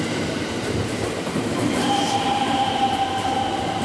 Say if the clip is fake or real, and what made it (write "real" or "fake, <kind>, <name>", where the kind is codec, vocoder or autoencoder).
fake, vocoder, BigVGAN v2